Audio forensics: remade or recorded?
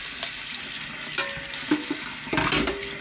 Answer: recorded